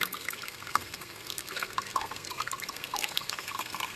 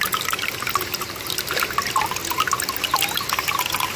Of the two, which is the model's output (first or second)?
first